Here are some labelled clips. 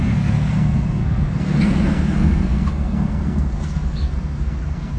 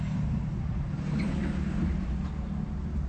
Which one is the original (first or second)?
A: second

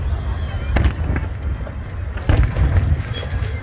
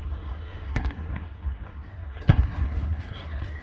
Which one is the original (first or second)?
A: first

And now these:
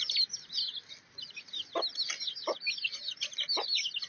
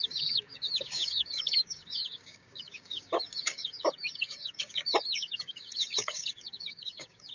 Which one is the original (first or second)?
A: first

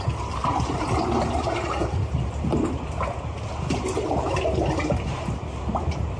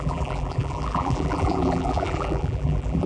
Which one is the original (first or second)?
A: first